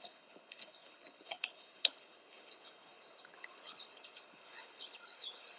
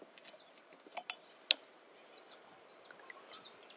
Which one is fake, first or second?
first